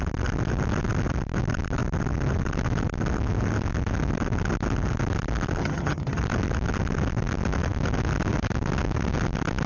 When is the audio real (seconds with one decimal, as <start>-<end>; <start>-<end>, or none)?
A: 0.0-5.6; 6.2-9.7